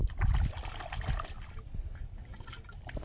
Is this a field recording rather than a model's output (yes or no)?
yes